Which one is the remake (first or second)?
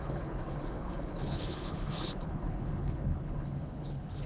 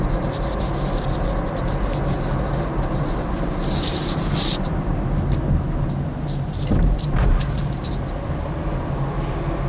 first